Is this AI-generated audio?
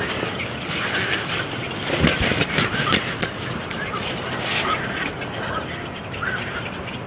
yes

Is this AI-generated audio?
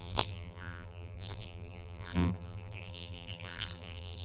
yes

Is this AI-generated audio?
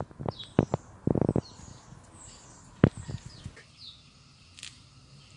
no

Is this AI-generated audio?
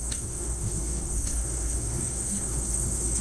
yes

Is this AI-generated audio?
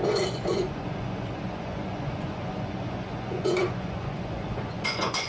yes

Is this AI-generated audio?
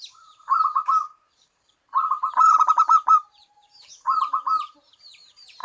yes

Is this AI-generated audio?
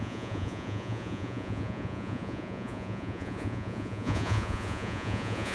yes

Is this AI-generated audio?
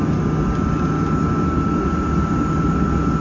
no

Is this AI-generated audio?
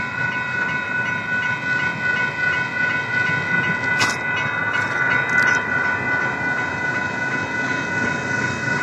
no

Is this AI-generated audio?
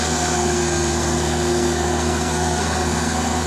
yes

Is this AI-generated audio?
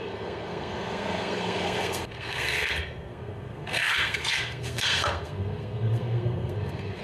yes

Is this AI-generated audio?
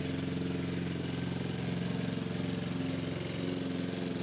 no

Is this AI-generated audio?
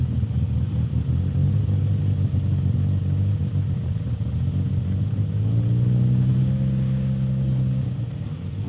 no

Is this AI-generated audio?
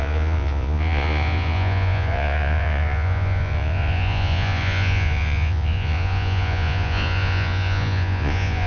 yes